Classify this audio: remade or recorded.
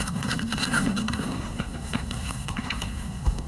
remade